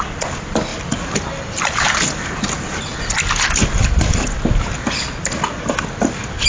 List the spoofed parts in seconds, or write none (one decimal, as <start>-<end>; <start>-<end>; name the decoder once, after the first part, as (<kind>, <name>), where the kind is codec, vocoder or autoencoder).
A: none